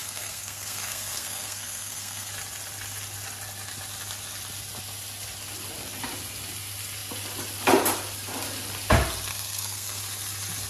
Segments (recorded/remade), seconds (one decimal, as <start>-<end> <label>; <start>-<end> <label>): 0.0-2.3 remade; 2.3-9.3 recorded; 9.3-10.0 remade; 10.0-10.7 recorded